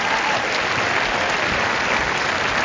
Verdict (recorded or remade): recorded